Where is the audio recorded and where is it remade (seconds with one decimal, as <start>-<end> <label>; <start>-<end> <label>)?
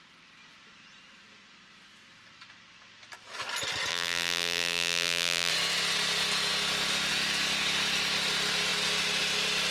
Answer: 0.0-3.9 recorded; 3.9-5.5 remade; 5.5-9.7 recorded